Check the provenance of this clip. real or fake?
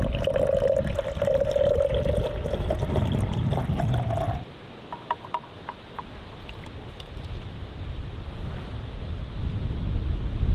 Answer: real